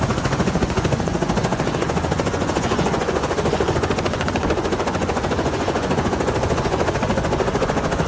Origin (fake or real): fake